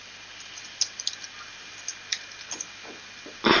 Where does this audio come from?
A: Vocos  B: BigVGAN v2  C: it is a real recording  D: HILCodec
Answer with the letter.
C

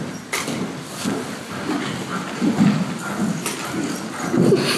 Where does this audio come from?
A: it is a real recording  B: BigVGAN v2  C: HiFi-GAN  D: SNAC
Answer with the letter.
A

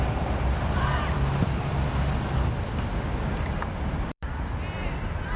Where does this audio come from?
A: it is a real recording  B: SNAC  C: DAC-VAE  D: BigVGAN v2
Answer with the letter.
D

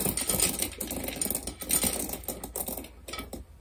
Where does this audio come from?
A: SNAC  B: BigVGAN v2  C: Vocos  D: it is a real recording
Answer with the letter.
D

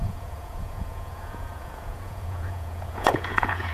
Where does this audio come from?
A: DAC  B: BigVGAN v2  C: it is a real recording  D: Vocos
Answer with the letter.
D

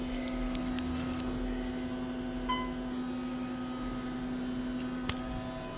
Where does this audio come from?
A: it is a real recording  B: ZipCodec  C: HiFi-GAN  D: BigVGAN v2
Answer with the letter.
A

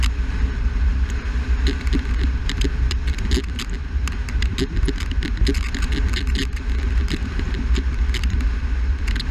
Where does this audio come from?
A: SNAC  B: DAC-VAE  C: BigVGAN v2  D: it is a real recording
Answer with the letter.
D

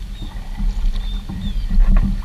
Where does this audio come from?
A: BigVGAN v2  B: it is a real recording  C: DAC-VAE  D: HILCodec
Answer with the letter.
B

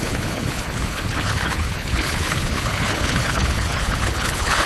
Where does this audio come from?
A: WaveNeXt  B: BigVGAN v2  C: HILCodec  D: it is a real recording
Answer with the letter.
C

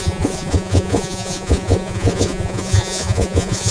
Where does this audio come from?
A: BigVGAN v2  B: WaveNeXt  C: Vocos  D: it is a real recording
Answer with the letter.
C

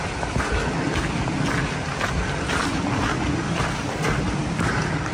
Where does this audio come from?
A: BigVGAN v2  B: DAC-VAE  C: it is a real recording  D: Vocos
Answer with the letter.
C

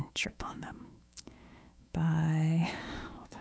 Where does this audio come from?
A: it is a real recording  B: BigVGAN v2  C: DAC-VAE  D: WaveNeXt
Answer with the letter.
C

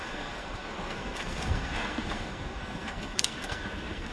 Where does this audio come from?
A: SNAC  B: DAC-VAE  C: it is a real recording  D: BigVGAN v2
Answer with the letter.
A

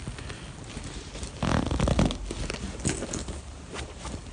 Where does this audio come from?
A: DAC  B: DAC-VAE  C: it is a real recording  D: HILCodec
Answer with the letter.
C